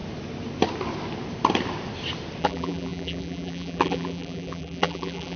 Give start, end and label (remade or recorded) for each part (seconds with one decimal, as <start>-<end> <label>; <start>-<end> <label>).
0.0-2.4 recorded; 2.4-5.4 remade

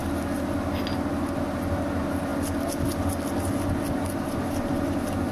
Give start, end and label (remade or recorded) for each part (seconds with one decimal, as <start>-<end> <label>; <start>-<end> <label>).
0.0-5.3 recorded

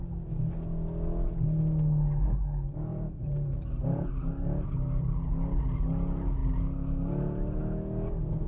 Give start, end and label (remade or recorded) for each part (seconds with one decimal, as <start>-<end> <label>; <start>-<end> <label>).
0.0-2.9 recorded; 2.9-4.1 remade; 4.1-8.5 recorded

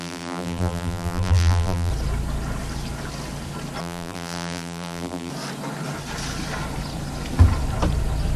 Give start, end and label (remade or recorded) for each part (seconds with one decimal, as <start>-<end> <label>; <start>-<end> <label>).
0.0-1.9 remade; 1.9-3.8 recorded; 3.8-5.3 remade; 5.3-8.4 recorded

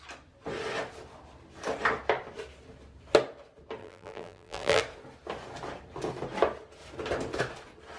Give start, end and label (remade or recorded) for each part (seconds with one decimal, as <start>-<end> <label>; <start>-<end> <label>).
0.0-3.8 recorded; 3.8-4.8 remade; 4.8-8.0 recorded

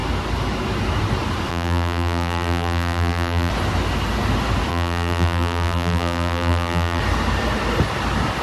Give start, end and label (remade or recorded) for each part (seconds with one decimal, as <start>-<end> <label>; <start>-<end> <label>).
0.0-1.5 recorded; 1.5-3.5 remade; 3.5-4.7 recorded; 4.7-7.0 remade; 7.0-8.4 recorded

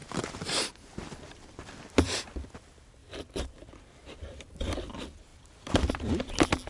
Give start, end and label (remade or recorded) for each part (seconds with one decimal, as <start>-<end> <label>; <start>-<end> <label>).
0.0-2.2 remade; 2.2-3.0 recorded; 3.0-4.6 remade; 4.6-5.3 recorded; 5.3-6.3 remade; 6.3-6.7 recorded